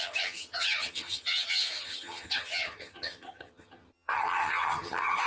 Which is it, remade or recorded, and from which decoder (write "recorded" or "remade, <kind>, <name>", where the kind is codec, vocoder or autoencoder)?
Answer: remade, vocoder, HiFi-GAN